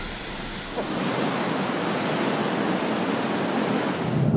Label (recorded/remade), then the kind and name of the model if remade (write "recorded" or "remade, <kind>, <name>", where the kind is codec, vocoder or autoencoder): recorded